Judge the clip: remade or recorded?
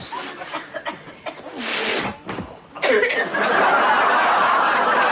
recorded